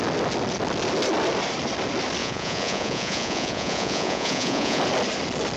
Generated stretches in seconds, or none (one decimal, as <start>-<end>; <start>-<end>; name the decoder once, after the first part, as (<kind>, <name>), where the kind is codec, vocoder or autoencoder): 2.2-4.8 (vocoder, Vocos)